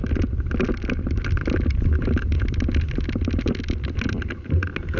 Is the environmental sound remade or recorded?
recorded